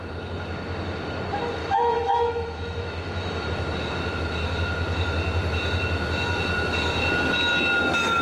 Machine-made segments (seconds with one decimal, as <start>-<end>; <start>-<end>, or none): 1.6-3.5